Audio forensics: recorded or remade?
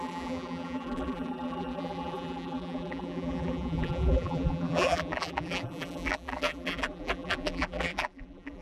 remade